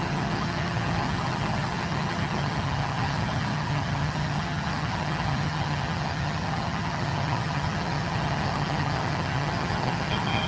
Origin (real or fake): fake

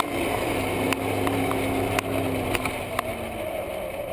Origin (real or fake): real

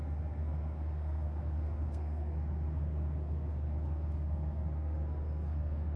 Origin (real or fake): fake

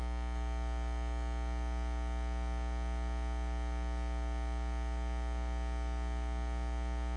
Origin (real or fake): real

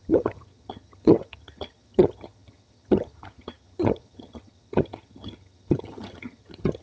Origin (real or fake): fake